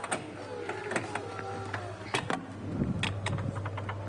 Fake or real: real